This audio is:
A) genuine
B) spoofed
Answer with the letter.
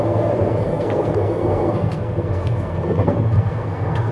B